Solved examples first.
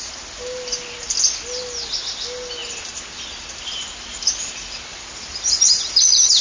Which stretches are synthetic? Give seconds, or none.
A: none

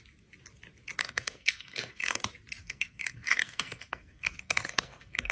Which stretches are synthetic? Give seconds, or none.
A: 1.0-2.2; 2.6-5.3

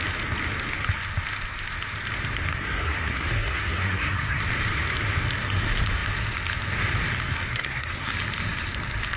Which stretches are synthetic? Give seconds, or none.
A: 2.5-4.4; 7.5-8.1

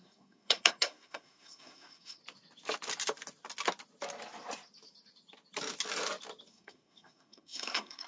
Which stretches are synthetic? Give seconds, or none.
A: 0.0-2.2; 6.5-8.1

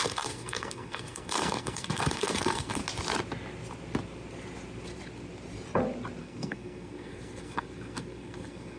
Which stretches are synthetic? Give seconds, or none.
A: 0.0-2.8; 6.2-8.8

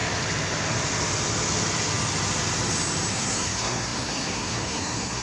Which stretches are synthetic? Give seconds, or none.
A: 3.1-5.2

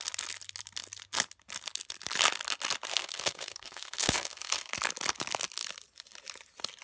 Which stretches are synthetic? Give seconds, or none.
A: 2.9-4.7